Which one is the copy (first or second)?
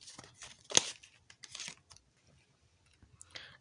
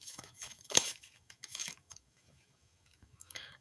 second